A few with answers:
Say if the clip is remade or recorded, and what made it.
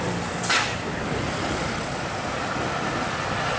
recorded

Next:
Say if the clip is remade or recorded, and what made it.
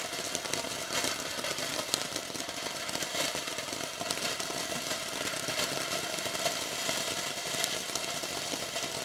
recorded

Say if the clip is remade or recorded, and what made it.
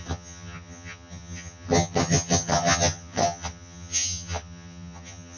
remade, vocoder, HiFi-GAN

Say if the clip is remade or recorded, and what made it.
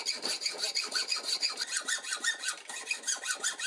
recorded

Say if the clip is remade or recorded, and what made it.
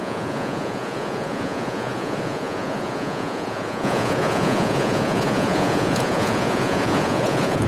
remade, vocoder, Vocos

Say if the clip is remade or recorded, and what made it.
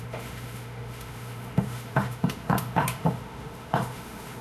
remade, autoencoder, DAC-VAE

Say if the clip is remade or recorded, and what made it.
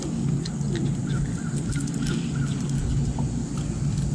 recorded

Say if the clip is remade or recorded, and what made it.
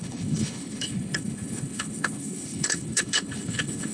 remade, codec, HILCodec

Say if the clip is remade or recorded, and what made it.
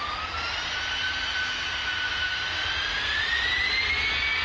recorded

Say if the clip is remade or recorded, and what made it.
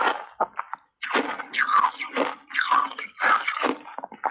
recorded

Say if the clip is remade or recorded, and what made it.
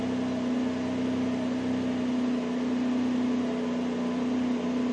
recorded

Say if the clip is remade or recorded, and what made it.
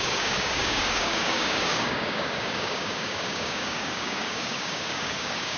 remade, codec, DAC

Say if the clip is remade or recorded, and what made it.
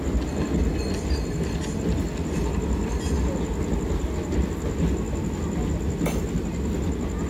recorded